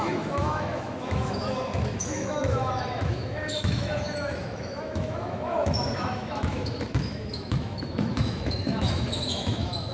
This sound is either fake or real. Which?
fake